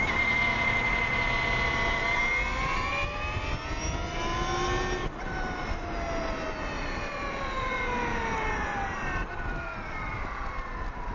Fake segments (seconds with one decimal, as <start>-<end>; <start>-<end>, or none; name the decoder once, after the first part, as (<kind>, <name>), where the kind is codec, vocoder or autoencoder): none